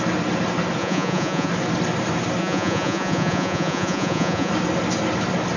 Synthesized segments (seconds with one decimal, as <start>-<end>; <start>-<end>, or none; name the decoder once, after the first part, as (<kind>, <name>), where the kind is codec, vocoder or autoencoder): 0.8-1.5 (vocoder, Vocos); 2.4-4.5